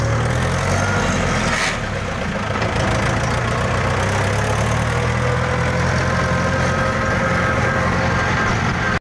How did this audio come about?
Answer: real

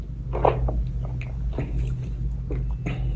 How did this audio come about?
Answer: real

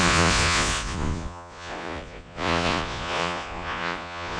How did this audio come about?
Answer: fake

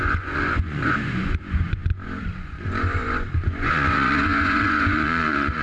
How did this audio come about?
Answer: fake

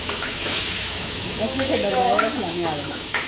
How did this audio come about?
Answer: fake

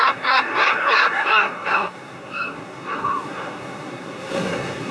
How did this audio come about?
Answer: fake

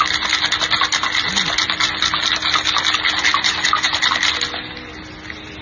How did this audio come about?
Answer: real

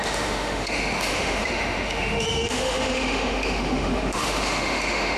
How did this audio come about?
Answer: fake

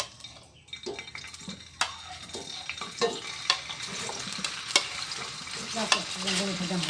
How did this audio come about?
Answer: real